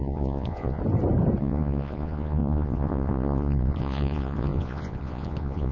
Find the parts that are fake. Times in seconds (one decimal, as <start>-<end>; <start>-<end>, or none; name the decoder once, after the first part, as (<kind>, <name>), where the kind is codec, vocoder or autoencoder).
0.0-0.8 (vocoder, Vocos); 1.4-5.7